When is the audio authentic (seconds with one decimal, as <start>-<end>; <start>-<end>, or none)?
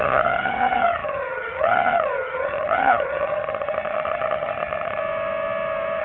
5.0-6.0